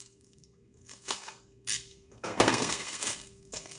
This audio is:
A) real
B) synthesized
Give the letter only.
B